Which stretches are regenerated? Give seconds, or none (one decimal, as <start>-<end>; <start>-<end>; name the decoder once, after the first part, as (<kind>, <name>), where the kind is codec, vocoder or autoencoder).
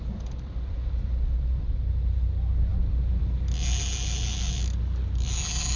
none